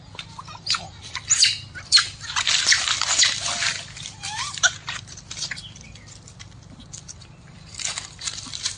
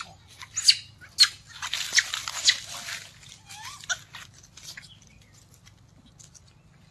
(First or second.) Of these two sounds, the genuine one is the second